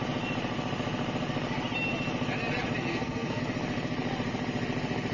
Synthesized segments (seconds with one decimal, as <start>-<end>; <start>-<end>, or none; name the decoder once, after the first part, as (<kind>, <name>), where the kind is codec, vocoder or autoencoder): 2.9-3.4 (codec, SNAC)